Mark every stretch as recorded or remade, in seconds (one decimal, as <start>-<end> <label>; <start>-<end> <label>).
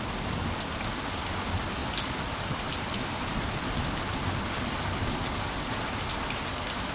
0.0-1.8 recorded; 1.8-3.8 remade; 3.8-6.9 recorded